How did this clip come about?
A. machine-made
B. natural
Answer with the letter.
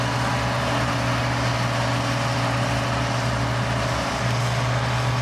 B